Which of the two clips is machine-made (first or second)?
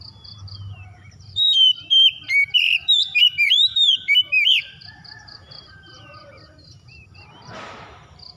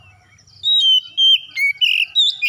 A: first